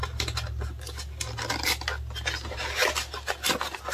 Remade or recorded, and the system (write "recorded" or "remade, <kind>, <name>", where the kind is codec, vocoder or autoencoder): recorded